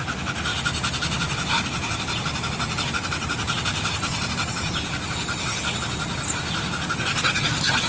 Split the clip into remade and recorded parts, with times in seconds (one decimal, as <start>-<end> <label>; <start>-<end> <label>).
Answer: 0.0-7.9 recorded